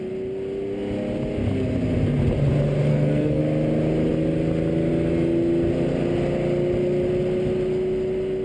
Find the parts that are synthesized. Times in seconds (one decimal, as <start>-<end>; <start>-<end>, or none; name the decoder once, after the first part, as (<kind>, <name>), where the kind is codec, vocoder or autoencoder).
2.9-3.4 (codec, SNAC)